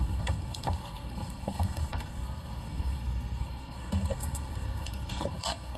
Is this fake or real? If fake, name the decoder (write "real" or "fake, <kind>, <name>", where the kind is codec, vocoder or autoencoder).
fake, codec, SNAC